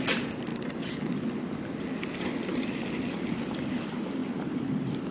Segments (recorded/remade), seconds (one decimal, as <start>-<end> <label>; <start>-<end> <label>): 0.0-5.1 recorded